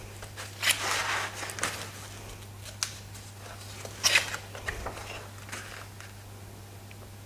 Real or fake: real